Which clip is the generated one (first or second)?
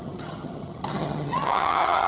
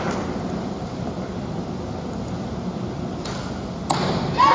first